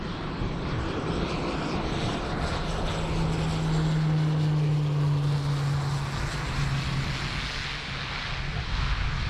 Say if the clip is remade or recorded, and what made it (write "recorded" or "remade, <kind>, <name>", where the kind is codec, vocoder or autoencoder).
recorded